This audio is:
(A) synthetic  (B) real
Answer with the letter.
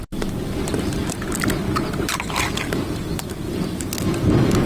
B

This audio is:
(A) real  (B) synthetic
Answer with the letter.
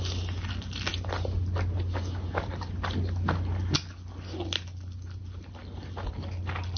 A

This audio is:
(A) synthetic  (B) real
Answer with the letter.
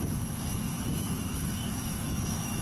A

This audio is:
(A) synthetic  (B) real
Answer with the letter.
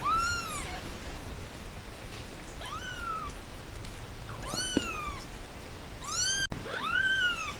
B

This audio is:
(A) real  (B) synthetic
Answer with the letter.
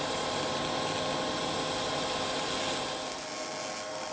A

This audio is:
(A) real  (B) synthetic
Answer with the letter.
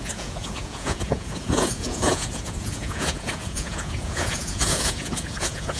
B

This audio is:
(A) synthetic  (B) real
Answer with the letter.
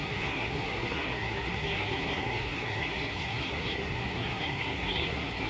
A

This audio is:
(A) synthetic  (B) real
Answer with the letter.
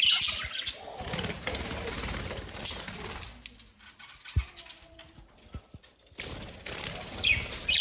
B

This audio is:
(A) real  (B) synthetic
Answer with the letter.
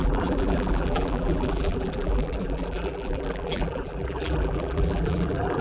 B